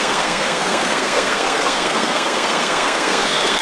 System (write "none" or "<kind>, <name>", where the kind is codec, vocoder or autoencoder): codec, SNAC